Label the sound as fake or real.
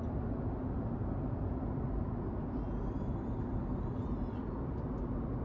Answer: real